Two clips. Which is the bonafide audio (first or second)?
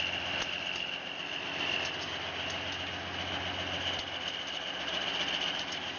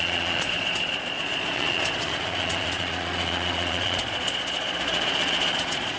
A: first